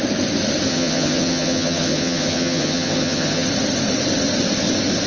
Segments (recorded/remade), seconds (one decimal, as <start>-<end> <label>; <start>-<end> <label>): 0.0-0.7 recorded; 0.7-3.5 remade; 3.5-5.1 recorded